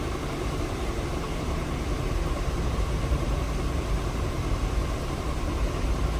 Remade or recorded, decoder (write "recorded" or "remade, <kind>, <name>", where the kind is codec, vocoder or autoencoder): remade, vocoder, BigVGAN v2